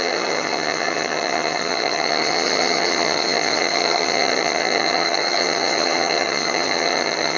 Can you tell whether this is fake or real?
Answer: fake